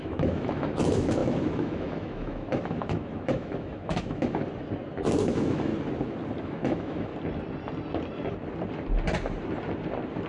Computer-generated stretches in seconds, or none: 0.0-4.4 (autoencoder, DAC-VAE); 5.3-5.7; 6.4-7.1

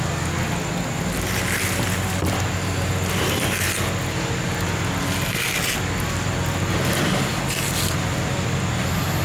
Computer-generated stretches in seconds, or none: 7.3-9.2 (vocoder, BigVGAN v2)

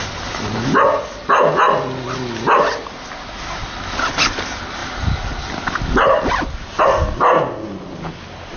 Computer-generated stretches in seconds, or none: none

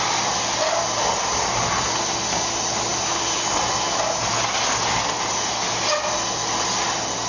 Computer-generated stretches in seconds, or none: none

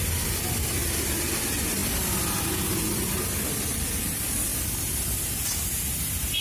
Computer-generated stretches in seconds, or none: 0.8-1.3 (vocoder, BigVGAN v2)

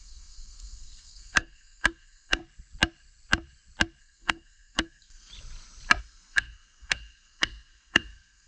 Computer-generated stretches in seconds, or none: 0.0-2.4 (codec, SNAC); 4.0-5.3; 6.0-8.5